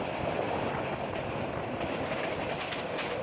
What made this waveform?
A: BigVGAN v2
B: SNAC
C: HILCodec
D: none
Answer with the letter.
D